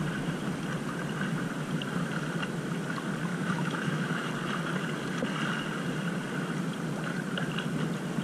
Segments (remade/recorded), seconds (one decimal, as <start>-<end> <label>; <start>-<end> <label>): 0.0-3.3 recorded; 3.3-4.3 remade; 4.3-8.2 recorded